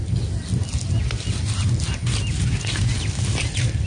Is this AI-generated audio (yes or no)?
no